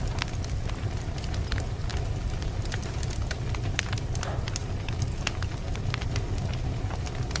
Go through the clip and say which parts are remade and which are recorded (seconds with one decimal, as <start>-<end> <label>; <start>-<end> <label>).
0.0-7.4 recorded